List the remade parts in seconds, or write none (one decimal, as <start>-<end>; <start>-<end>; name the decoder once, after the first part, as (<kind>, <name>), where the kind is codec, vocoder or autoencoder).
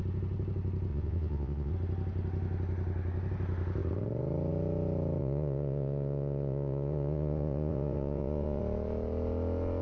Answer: 0.9-1.7 (vocoder, Vocos); 5.2-8.6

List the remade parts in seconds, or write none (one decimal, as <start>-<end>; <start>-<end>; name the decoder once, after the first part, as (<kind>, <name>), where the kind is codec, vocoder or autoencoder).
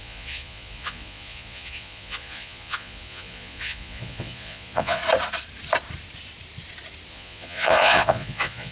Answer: 0.0-5.0 (vocoder, Vocos); 7.1-8.7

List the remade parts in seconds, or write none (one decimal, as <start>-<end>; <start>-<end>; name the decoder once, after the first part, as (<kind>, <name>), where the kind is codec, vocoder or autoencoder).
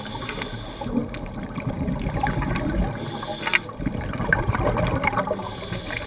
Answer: none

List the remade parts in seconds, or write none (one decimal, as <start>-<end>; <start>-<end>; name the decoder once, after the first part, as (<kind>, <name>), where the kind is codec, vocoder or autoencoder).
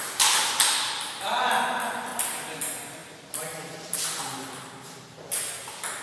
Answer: 3.0-5.3 (vocoder, BigVGAN v2)